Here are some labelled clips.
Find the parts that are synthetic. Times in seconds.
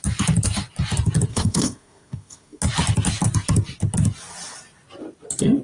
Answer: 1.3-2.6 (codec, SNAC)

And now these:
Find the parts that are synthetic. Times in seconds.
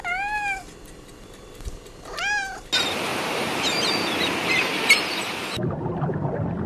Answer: 3.1-3.9 (vocoder, BigVGAN v2)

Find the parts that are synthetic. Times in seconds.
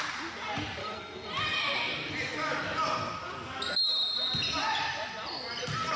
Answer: 0.8-1.3 (codec, SNAC)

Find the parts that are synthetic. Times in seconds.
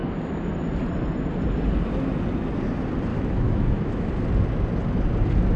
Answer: 3.1-4.1 (autoencoder, DAC-VAE)